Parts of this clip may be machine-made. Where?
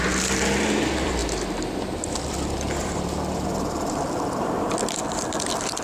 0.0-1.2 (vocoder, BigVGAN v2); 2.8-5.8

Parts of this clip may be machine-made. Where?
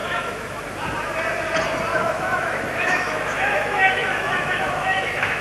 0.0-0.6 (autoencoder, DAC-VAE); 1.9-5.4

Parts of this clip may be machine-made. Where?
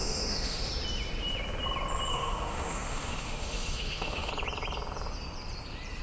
0.0-0.7 (autoencoder, DAC-VAE); 2.1-4.3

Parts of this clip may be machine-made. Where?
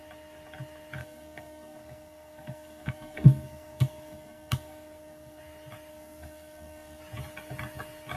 1.0-5.4 (codec, SNAC); 5.9-7.0